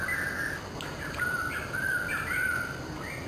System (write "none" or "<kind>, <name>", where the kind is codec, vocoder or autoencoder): none